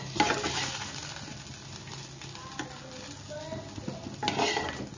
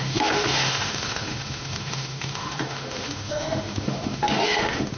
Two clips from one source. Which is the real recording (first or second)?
first